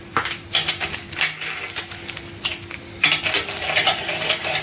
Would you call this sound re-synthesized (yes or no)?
no